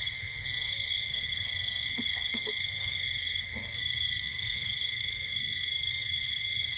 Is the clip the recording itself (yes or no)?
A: no